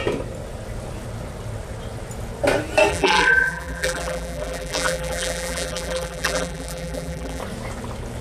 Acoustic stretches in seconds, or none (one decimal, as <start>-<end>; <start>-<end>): 0.0-2.9; 7.4-8.2